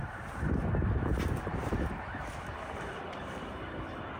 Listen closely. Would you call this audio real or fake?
real